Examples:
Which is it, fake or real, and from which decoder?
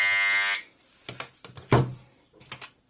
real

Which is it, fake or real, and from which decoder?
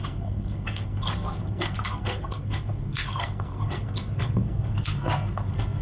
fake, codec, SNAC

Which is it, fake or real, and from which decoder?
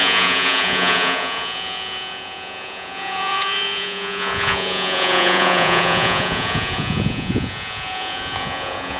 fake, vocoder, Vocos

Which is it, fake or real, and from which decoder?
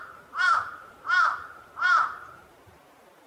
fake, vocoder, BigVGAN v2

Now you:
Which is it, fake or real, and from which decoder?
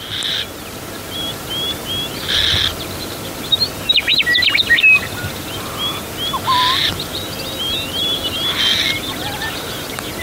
real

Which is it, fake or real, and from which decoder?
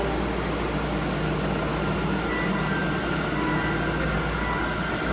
real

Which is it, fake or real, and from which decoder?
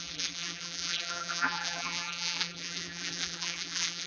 fake, vocoder, BigVGAN v2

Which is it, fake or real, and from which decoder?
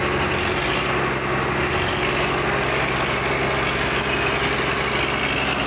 real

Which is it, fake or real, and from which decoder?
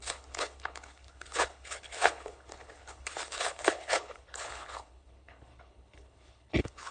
fake, codec, HILCodec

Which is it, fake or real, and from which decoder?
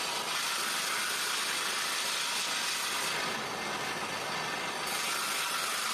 real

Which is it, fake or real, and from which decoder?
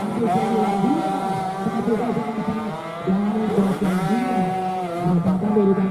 fake, vocoder, BigVGAN v2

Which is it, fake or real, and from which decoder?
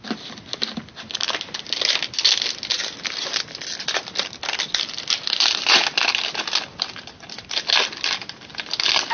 real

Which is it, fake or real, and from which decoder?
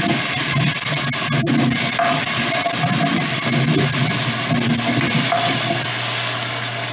real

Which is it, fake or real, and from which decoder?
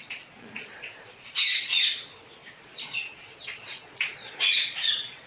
fake, vocoder, Vocos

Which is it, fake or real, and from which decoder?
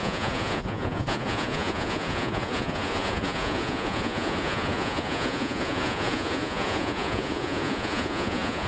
fake, vocoder, Vocos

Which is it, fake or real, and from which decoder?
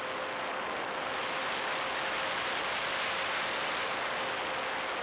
real